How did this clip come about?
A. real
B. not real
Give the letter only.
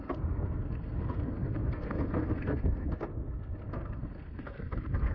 B